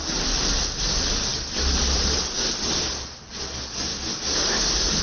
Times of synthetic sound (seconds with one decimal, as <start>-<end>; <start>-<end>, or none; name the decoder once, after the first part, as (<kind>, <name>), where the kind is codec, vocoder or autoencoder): 0.0-3.9 (vocoder, BigVGAN v2)